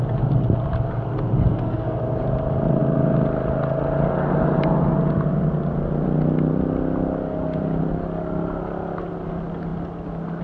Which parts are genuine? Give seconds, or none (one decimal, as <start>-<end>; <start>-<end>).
0.0-1.5; 2.0-10.4